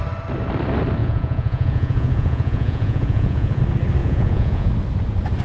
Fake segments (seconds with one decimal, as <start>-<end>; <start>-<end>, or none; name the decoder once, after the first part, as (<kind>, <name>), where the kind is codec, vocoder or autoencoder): 1.0-3.6 (vocoder, Vocos); 4.0-4.7